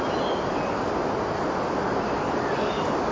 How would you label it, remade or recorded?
recorded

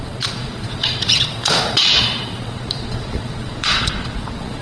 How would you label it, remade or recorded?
remade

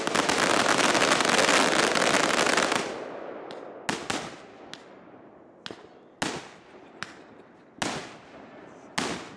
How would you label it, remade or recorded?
recorded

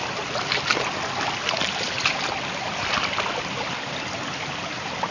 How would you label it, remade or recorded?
recorded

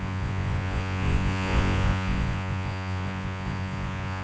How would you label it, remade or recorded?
remade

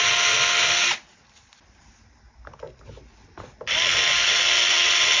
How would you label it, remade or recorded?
recorded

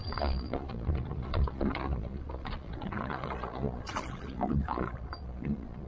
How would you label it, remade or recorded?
remade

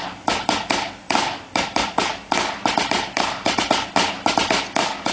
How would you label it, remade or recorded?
recorded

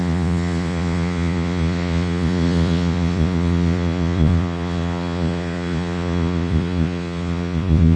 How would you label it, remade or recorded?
remade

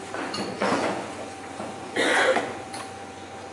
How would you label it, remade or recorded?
remade